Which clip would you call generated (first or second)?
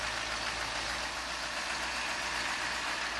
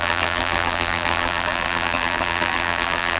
second